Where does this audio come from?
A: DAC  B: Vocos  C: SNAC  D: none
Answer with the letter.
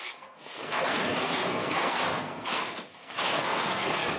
C